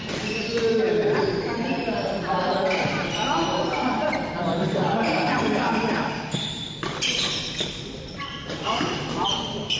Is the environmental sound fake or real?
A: real